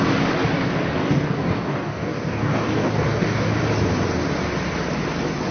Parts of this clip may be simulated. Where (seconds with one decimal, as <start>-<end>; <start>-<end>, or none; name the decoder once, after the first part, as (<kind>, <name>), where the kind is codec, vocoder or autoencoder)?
1.0-3.6 (codec, DAC)